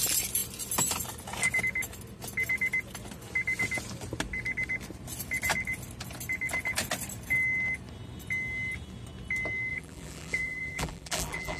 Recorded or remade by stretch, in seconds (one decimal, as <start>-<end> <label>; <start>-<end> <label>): 0.0-9.7 recorded; 9.7-11.6 remade